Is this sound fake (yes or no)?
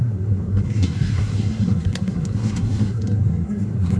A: yes